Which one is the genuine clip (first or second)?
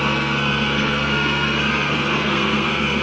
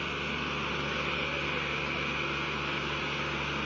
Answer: second